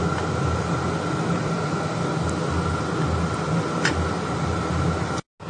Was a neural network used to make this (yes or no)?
no